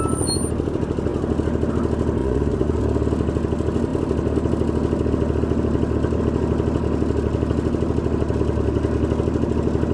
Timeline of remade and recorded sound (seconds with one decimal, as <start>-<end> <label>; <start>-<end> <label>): 0.0-2.2 recorded; 2.2-2.8 remade; 2.8-9.9 recorded